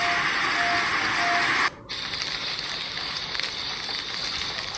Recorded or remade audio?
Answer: recorded